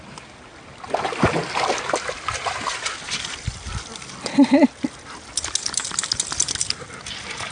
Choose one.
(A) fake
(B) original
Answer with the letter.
B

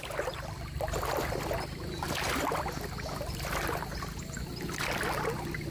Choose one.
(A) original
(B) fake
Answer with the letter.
A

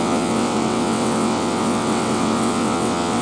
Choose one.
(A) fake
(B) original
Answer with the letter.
A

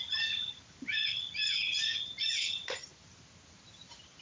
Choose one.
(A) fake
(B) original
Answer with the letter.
B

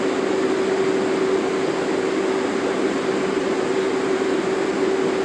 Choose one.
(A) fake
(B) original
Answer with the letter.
B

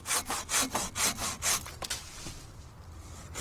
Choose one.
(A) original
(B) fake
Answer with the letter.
A